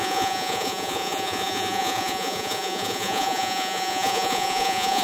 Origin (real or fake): fake